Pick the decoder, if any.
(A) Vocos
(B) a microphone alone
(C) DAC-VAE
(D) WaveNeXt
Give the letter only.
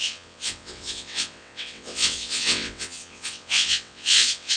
D